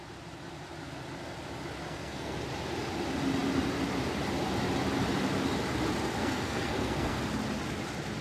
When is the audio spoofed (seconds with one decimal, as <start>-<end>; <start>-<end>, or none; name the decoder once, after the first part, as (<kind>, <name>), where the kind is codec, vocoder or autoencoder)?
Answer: 1.8-2.4 (codec, SNAC); 6.2-7.2